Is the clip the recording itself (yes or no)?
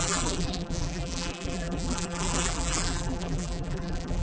no